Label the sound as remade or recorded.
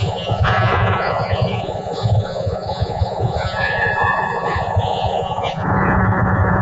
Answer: remade